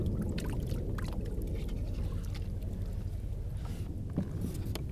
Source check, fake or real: real